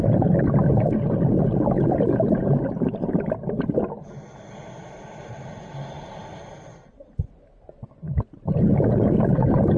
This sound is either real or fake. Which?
real